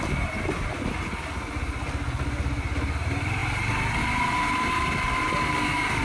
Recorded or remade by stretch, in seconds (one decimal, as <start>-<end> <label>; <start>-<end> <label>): 0.0-6.0 recorded